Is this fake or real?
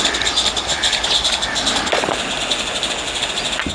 real